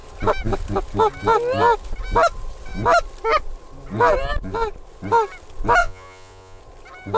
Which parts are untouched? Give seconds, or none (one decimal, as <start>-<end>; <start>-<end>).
0.0-5.8; 6.6-7.2